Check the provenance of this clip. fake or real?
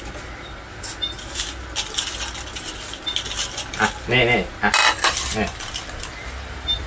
real